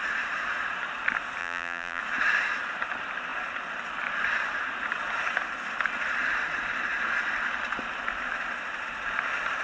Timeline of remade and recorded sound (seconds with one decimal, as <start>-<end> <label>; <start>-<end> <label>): 0.0-1.4 recorded; 1.4-2.0 remade; 2.0-9.6 recorded